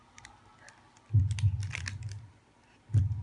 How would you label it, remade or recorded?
recorded